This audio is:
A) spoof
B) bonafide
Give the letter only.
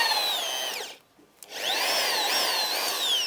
B